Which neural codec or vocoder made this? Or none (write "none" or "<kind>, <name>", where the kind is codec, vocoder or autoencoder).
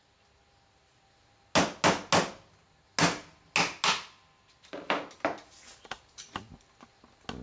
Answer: none